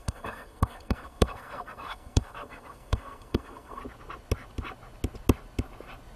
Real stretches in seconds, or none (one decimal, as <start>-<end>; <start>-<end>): 3.8-6.2